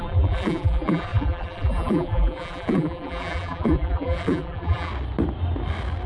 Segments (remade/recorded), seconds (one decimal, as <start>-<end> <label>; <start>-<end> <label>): 0.0-4.9 remade; 4.9-6.1 recorded